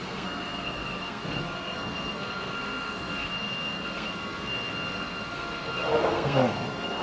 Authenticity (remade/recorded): remade